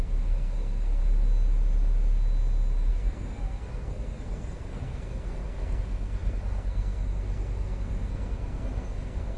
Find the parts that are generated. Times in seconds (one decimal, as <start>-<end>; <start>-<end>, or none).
0.0-1.0; 2.9-9.4